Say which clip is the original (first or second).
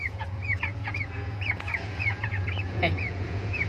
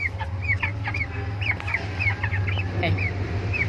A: second